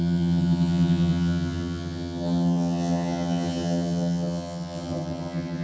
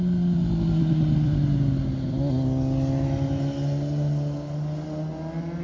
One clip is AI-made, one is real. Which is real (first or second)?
second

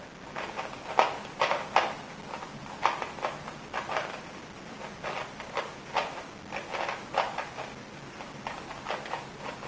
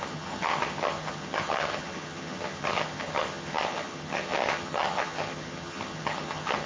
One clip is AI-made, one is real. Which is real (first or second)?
first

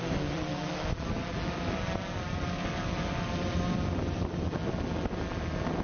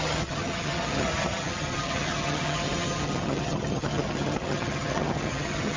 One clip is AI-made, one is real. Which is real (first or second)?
first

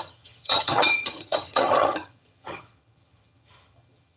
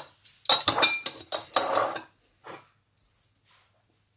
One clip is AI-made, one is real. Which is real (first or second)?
second